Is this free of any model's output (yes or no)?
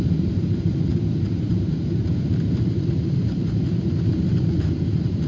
no